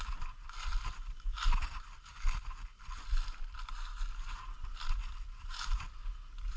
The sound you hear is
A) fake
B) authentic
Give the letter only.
B